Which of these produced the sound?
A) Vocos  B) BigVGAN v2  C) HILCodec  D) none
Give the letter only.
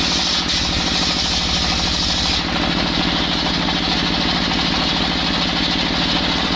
D